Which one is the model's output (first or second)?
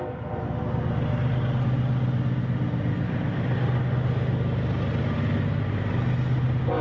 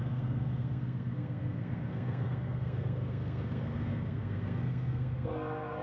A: second